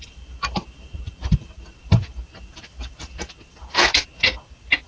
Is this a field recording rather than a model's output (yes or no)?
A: yes